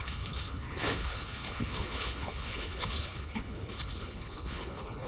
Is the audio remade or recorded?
remade